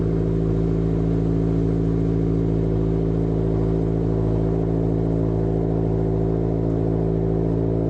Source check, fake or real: real